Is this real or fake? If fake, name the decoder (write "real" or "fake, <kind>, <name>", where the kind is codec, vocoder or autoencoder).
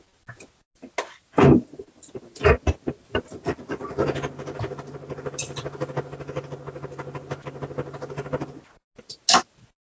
real